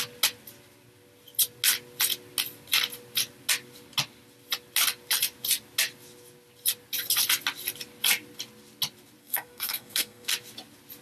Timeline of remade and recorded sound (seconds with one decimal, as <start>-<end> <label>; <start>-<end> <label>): 0.0-9.2 recorded; 9.2-10.3 remade; 10.3-11.0 recorded